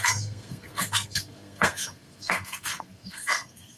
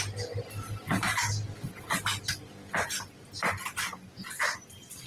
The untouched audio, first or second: second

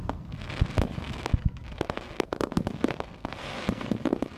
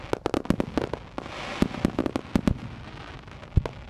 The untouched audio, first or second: second